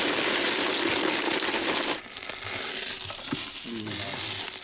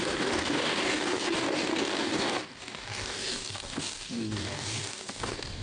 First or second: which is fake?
second